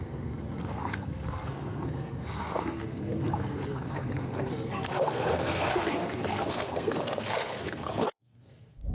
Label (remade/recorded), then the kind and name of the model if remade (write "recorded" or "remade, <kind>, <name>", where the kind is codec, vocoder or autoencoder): remade, codec, SNAC